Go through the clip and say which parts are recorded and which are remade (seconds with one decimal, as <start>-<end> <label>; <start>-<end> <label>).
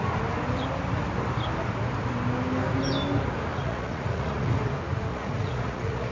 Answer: 0.0-3.5 recorded; 3.5-4.6 remade; 4.6-5.1 recorded; 5.1-6.1 remade